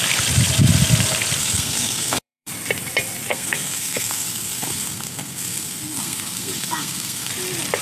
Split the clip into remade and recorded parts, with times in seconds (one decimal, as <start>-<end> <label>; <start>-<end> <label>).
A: 0.0-1.4 recorded; 1.4-2.5 remade; 2.5-3.3 recorded; 3.3-7.3 remade; 7.3-7.8 recorded

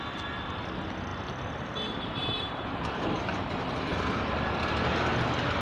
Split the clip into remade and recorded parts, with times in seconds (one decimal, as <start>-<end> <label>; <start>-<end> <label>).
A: 0.0-1.1 recorded; 1.1-3.2 remade; 3.2-5.6 recorded

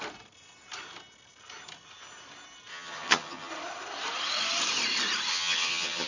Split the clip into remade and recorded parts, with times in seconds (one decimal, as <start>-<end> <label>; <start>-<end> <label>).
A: 0.0-2.7 recorded; 2.7-3.5 remade; 3.5-5.3 recorded; 5.3-6.1 remade

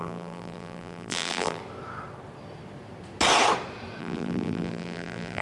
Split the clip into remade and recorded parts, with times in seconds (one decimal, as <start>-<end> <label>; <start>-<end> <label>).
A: 0.0-1.6 remade; 1.6-4.0 recorded; 4.0-5.4 remade

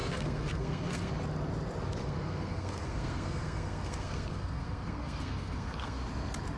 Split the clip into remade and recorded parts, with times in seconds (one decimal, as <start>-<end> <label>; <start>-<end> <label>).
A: 0.0-1.1 remade; 1.1-2.0 recorded; 2.0-6.0 remade; 6.0-6.6 recorded

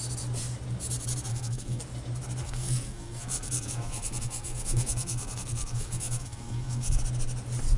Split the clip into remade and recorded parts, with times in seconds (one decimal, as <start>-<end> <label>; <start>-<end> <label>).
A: 0.0-1.3 recorded; 1.3-1.8 remade; 1.8-2.4 recorded; 2.4-7.0 remade; 7.0-7.8 recorded